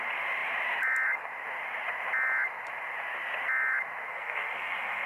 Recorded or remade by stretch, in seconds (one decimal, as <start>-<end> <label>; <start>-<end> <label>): 0.0-4.1 recorded; 4.1-5.1 remade